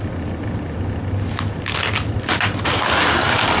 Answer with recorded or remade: recorded